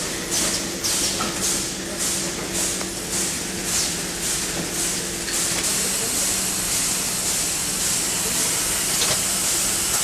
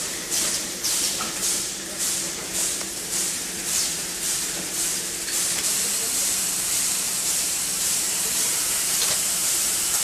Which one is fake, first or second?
second